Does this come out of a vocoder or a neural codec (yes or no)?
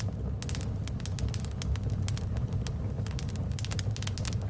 no